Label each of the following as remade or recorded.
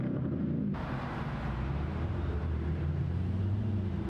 remade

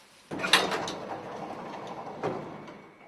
recorded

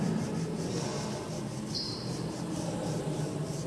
recorded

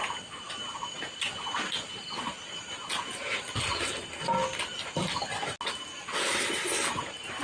recorded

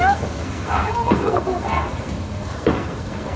remade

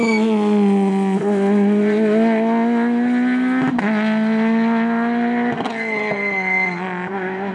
recorded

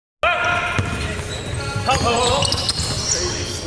recorded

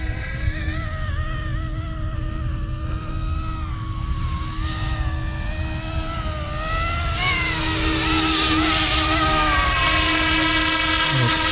recorded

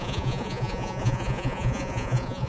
remade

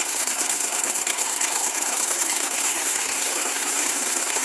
remade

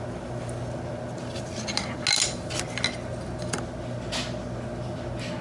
recorded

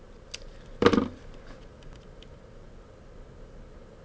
recorded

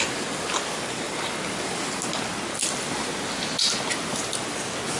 recorded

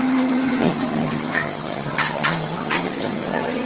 remade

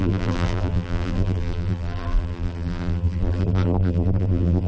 remade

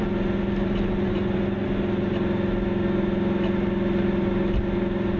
recorded